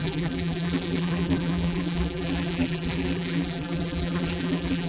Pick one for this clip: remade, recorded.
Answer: remade